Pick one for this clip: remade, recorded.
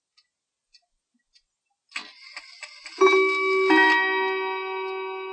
recorded